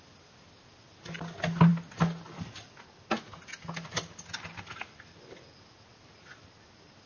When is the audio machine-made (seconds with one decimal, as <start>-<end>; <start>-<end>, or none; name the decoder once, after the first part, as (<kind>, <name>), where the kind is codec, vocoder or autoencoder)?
none